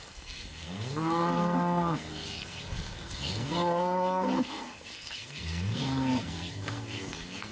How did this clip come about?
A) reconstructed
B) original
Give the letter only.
A